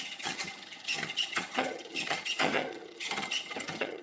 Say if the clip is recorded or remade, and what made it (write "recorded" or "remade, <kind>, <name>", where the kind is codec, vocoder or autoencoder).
remade, vocoder, HiFi-GAN